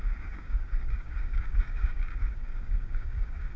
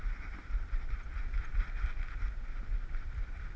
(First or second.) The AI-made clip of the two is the first